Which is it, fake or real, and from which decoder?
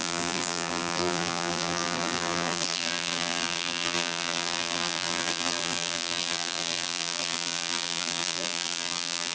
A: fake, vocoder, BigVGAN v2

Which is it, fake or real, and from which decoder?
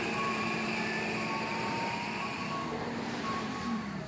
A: fake, vocoder, BigVGAN v2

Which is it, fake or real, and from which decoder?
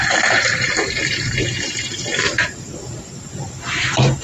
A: fake, vocoder, BigVGAN v2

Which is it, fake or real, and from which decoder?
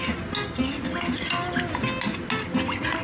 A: real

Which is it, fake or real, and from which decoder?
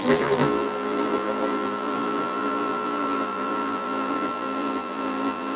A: fake, vocoder, BigVGAN v2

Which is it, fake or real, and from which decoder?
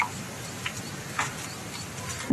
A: real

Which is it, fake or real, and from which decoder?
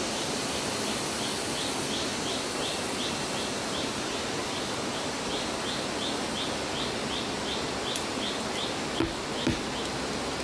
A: real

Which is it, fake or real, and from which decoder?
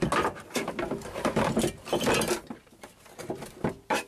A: real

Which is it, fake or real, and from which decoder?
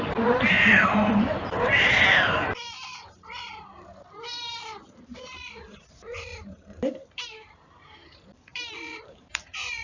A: fake, vocoder, BigVGAN v2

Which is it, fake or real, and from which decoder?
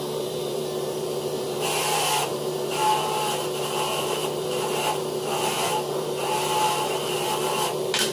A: fake, vocoder, BigVGAN v2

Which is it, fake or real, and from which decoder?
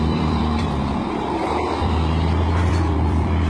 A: fake, vocoder, BigVGAN v2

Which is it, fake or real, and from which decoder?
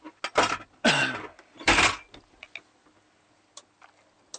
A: real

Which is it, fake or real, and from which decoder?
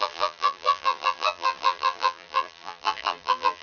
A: fake, vocoder, BigVGAN v2